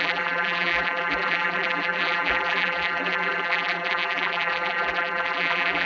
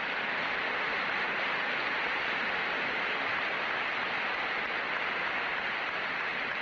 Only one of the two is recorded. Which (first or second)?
second